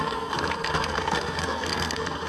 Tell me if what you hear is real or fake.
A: fake